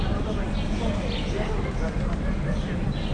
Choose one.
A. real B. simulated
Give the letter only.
A